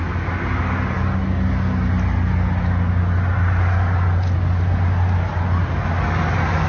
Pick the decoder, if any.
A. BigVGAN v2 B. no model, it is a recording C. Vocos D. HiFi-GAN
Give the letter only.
B